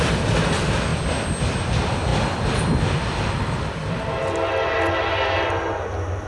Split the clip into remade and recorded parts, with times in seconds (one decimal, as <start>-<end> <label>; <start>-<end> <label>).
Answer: 0.0-6.3 recorded

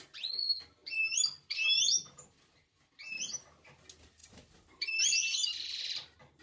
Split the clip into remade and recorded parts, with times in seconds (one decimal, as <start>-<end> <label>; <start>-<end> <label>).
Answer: 0.0-6.4 recorded

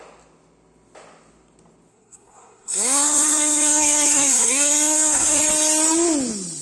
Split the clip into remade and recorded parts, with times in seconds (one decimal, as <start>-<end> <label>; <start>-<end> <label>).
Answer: 0.0-1.9 recorded; 1.9-5.4 remade; 5.4-6.6 recorded

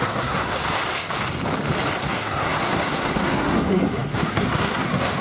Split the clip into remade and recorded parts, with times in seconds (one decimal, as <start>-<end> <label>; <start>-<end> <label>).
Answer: 0.0-0.6 remade; 0.6-2.1 recorded; 2.1-5.2 remade

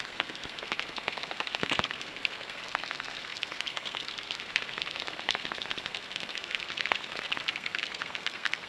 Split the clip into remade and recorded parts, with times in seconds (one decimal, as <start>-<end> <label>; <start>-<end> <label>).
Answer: 0.0-8.7 remade